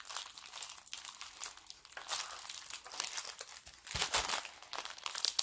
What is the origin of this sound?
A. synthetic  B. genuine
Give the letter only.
B